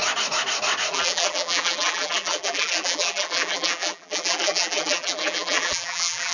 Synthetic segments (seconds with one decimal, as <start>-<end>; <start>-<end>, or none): 0.9-6.3